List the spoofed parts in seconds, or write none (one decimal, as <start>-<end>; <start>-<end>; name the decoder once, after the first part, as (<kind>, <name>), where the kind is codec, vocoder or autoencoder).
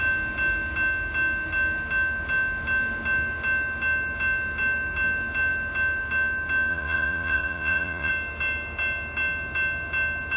6.7-8.1 (vocoder, Vocos)